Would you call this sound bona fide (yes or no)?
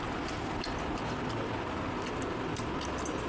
yes